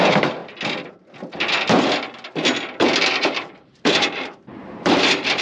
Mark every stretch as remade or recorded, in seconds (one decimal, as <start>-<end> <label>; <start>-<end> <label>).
0.0-0.4 remade; 0.4-3.1 recorded; 3.1-5.4 remade